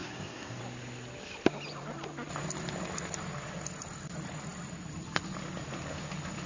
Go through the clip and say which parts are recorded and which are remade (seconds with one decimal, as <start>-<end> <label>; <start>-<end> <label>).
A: 0.0-0.6 remade; 0.6-6.5 recorded